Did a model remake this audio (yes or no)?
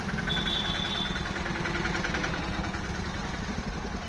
no